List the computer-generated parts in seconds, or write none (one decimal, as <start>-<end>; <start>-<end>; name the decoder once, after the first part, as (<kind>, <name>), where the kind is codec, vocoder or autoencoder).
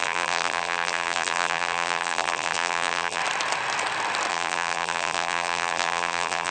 0.0-3.2 (vocoder, BigVGAN v2); 4.3-6.5